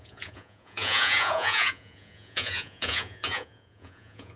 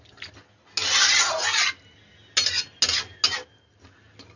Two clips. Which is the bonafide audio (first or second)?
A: second